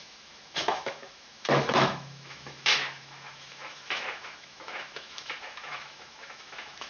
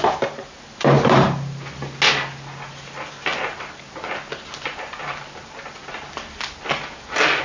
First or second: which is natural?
second